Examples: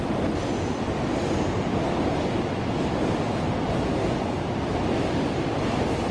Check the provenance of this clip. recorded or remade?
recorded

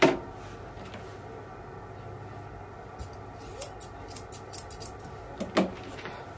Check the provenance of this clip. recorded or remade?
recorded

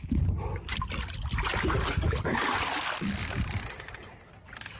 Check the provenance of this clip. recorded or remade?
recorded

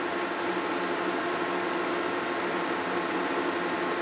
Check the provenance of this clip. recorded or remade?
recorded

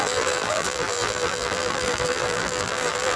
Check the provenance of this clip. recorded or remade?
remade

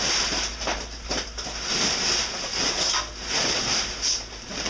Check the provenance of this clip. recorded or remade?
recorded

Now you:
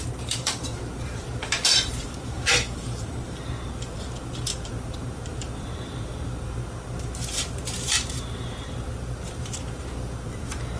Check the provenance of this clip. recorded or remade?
remade